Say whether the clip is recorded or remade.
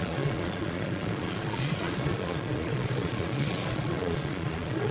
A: remade